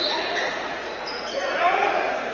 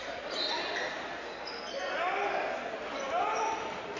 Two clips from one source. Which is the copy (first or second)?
first